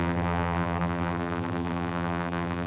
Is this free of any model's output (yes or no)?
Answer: no